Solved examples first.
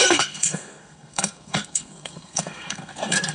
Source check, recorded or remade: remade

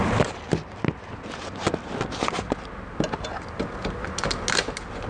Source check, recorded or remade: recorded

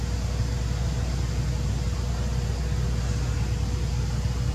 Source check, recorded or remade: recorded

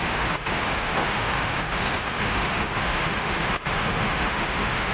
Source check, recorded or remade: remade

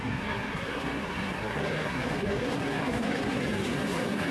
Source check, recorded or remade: remade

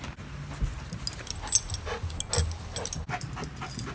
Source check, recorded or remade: recorded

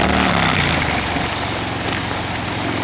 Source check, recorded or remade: recorded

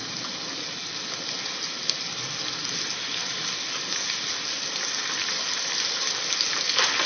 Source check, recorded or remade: recorded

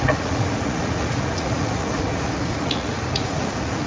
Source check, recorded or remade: remade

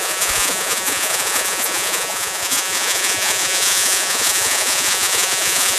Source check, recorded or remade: remade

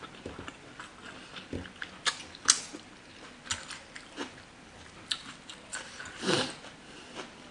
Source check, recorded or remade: recorded